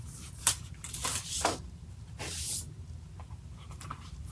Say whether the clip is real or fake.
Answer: real